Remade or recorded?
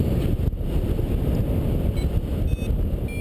recorded